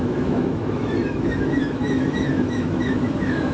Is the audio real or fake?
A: fake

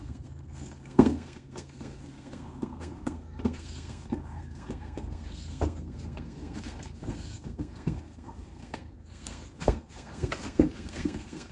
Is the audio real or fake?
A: fake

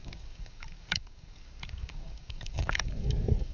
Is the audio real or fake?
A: fake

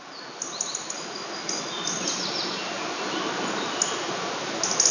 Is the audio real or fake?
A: real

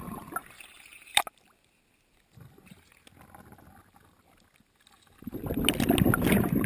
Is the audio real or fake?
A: real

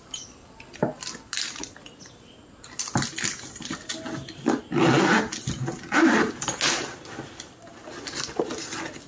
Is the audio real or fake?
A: real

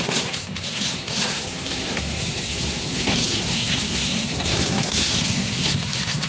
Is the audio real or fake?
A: fake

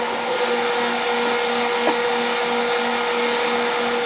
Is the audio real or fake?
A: real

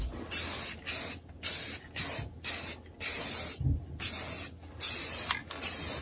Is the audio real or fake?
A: real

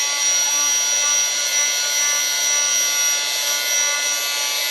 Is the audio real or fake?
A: real